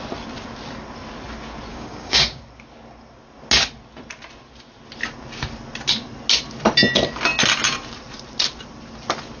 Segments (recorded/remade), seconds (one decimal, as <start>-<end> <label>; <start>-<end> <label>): 0.0-1.7 recorded; 1.7-2.4 remade; 2.4-9.4 recorded